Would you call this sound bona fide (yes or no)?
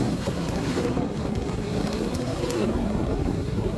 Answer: no